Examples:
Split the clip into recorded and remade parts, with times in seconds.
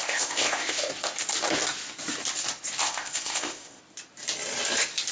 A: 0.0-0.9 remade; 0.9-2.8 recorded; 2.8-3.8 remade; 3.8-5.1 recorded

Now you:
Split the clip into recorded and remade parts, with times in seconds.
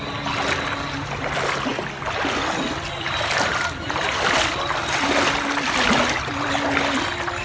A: 0.0-7.4 recorded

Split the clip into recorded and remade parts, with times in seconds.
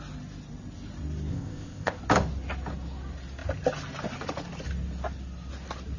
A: 0.0-1.3 recorded; 1.3-2.0 remade; 2.0-6.0 recorded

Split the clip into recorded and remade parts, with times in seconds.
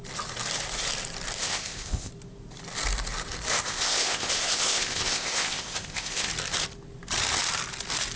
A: 0.0-1.4 recorded; 1.4-2.1 remade; 2.1-3.5 recorded; 3.5-6.3 remade; 6.3-8.2 recorded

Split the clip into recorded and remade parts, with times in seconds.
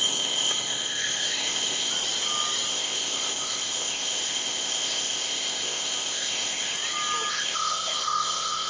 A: 0.0-1.9 remade; 1.9-2.7 recorded; 2.7-6.7 remade; 6.7-7.3 recorded; 7.3-8.7 remade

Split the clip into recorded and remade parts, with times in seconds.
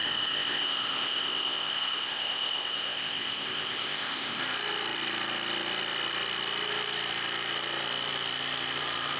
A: 0.0-4.4 remade; 4.4-9.2 recorded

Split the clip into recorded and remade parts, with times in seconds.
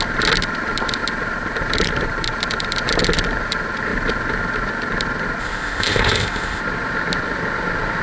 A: 0.0-5.4 recorded; 5.4-6.6 remade; 6.6-8.0 recorded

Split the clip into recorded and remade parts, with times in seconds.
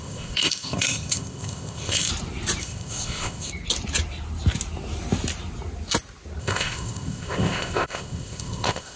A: 0.0-2.1 remade; 2.1-2.6 recorded; 2.6-3.5 remade; 3.5-6.4 recorded; 6.4-9.0 remade